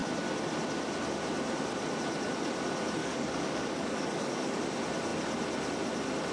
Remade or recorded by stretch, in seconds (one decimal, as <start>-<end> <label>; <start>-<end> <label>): 0.0-3.0 recorded; 3.0-4.6 remade; 4.6-6.3 recorded